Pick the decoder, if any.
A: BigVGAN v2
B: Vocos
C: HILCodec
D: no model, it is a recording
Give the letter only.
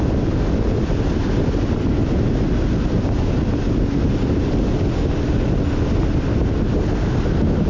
D